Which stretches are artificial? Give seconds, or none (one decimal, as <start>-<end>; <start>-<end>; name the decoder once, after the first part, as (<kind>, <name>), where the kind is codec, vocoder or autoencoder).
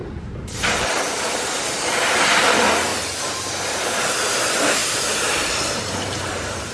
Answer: 0.0-6.7 (vocoder, BigVGAN v2)